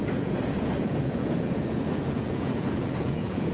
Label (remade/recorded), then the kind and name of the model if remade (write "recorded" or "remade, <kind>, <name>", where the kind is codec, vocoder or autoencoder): remade, vocoder, Vocos